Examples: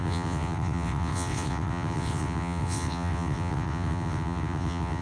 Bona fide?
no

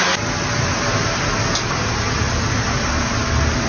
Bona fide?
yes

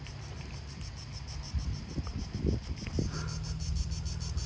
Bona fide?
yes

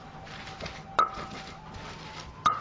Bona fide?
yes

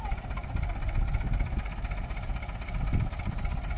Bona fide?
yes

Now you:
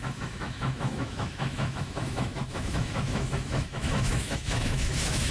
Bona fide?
no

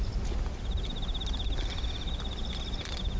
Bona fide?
yes